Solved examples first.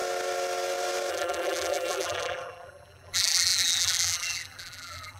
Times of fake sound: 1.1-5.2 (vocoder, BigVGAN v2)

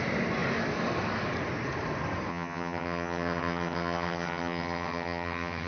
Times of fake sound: 2.3-5.7 (vocoder, HiFi-GAN)